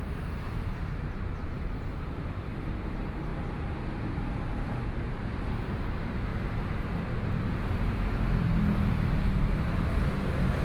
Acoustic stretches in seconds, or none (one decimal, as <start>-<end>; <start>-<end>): 6.3-8.9